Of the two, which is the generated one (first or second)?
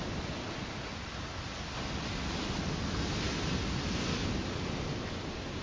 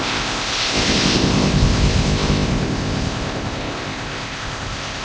second